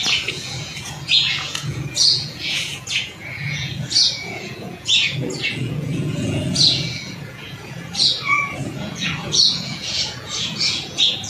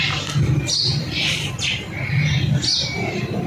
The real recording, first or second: second